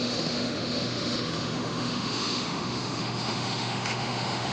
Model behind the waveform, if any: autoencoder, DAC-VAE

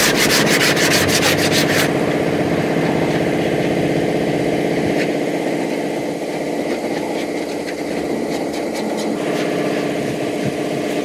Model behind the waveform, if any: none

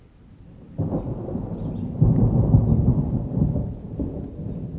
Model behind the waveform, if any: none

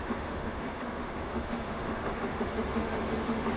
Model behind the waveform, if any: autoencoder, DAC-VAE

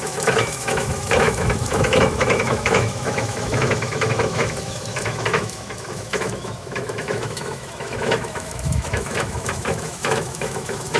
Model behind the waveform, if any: autoencoder, DAC-VAE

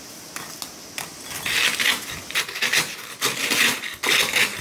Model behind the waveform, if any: none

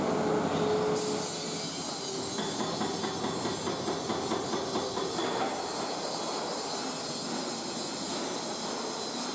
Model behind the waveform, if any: none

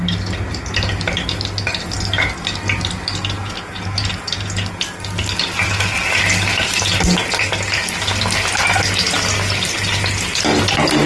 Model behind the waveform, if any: none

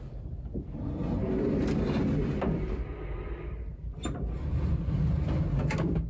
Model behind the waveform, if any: none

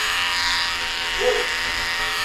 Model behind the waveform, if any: autoencoder, DAC-VAE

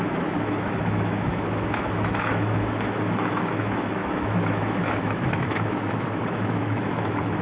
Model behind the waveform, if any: autoencoder, DAC-VAE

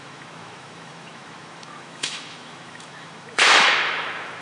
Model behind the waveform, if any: autoencoder, DAC-VAE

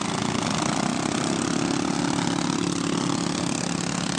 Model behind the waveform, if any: none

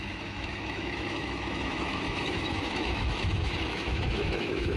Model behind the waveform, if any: autoencoder, DAC-VAE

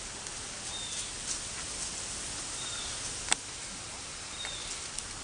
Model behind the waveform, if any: none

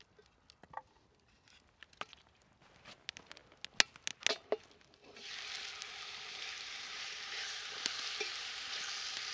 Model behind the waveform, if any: none